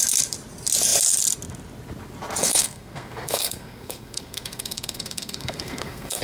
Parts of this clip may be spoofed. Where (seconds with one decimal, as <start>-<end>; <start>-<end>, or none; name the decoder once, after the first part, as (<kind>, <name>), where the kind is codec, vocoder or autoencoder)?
2.4-6.2 (codec, SNAC)